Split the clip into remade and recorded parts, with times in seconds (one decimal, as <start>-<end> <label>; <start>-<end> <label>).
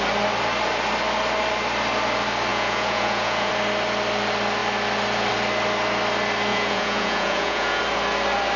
0.0-2.5 recorded; 2.5-3.5 remade; 3.5-6.5 recorded; 6.5-7.8 remade; 7.8-8.6 recorded